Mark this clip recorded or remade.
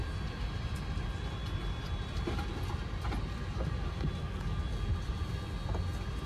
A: recorded